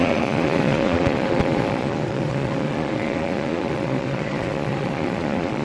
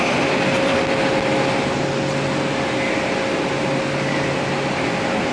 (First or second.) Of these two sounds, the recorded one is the second